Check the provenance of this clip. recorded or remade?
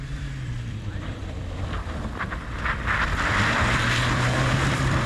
remade